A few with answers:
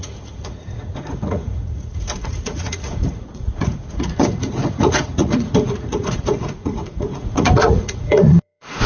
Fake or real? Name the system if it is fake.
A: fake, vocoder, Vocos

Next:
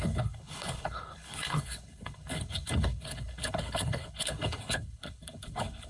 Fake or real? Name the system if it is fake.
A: fake, codec, HILCodec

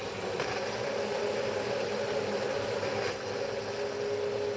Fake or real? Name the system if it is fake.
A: real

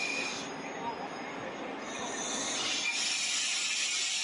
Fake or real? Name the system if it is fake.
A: real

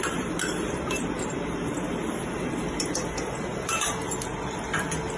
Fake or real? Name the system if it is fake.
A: real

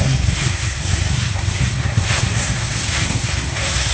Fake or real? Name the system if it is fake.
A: fake, codec, SNAC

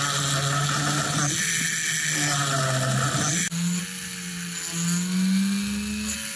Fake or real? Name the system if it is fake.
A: real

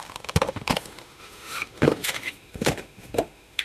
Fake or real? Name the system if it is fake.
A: fake, autoencoder, DAC-VAE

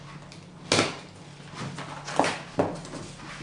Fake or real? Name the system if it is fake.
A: real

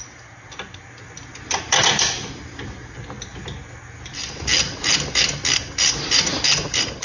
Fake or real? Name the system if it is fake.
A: real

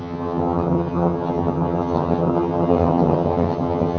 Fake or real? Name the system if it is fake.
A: fake, vocoder, HiFi-GAN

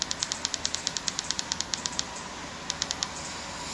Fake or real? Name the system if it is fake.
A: real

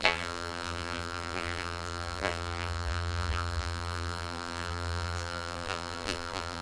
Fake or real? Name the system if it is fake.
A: fake, vocoder, BigVGAN v2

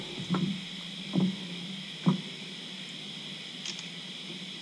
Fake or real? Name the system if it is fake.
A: real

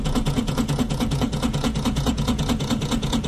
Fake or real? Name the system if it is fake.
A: fake, vocoder, Vocos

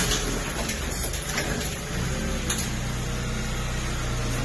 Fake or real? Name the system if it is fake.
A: real